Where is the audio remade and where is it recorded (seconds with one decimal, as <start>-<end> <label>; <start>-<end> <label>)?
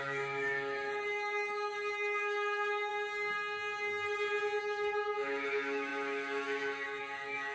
0.0-2.9 remade; 2.9-4.6 recorded; 4.6-7.5 remade